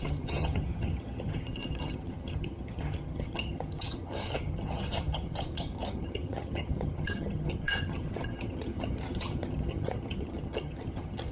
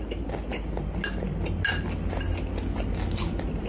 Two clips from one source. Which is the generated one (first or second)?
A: first